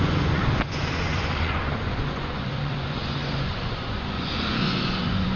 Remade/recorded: remade